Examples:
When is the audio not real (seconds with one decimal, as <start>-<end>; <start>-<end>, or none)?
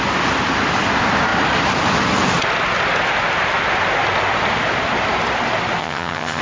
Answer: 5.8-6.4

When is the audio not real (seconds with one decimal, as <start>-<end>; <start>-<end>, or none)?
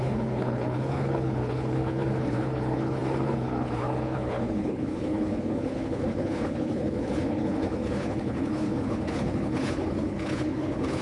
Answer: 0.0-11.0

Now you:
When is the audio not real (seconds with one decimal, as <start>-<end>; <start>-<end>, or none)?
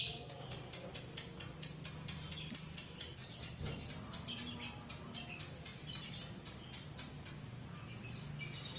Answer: none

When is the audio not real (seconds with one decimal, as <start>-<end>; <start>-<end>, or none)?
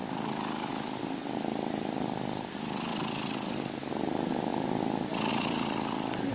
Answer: none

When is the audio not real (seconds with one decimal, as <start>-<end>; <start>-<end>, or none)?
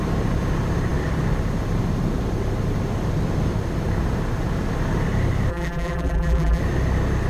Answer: 5.5-6.6